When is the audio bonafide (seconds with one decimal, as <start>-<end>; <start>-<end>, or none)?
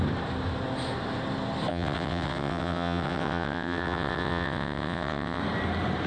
0.0-1.7; 5.4-6.1